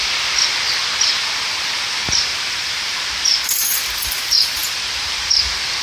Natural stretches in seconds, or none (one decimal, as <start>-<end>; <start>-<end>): 0.0-5.8